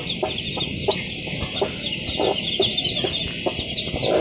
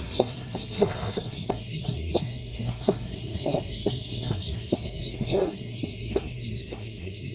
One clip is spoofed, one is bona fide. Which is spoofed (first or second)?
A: second